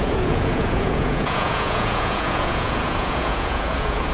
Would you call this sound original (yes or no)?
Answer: no